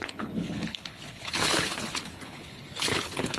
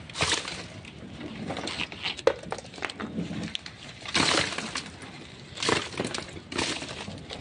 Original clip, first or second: second